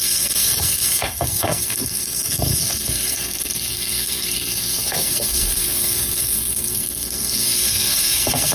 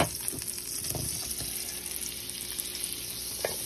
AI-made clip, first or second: first